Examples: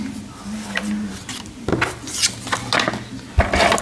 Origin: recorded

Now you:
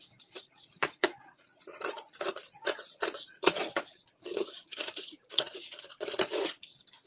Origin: remade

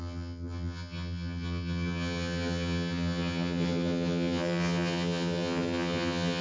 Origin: remade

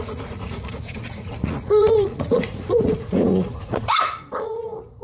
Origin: remade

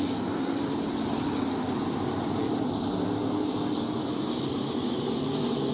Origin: recorded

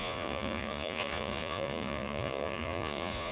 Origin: remade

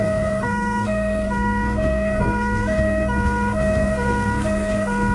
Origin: remade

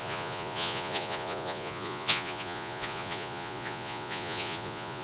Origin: remade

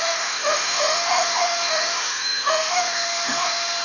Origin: remade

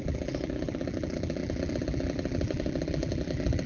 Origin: remade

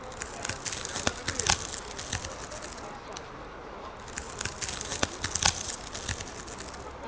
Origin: recorded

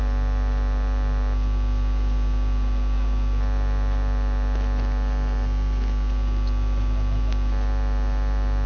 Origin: recorded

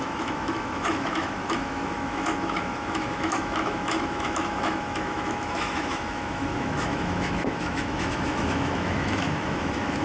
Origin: remade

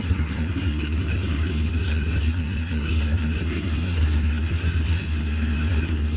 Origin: remade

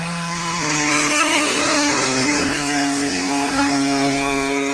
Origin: remade